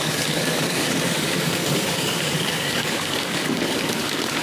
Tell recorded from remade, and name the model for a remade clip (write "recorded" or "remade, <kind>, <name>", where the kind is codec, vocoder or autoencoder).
remade, codec, DAC